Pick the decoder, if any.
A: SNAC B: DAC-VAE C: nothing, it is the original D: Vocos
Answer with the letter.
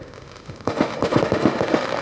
B